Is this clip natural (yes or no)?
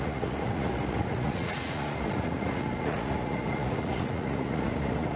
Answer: no